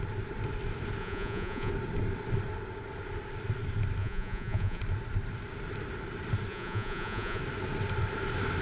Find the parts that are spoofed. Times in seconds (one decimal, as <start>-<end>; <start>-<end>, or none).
1.0-1.7; 4.0-4.8; 6.5-7.4